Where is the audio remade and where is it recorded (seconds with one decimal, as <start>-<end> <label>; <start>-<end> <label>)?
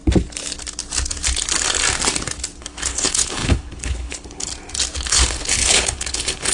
0.0-2.6 recorded; 2.6-4.5 remade; 4.5-5.0 recorded; 5.0-6.5 remade